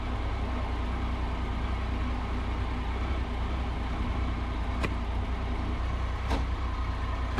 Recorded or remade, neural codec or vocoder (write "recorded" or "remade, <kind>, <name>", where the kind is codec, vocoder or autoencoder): recorded